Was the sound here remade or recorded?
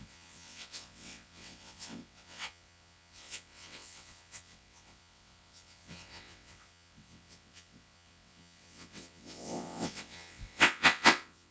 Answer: remade